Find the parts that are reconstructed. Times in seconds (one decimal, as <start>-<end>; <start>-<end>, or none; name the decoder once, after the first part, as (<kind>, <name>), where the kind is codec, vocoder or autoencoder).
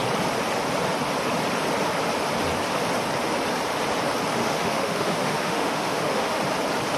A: 4.4-6.4 (autoencoder, DAC-VAE)